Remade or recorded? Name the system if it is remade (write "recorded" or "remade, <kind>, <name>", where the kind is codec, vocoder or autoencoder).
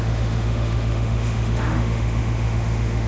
remade, autoencoder, DAC-VAE